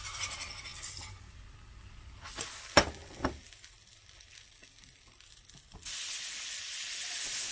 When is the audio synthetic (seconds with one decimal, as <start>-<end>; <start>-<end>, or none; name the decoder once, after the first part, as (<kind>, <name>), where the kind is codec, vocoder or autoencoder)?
none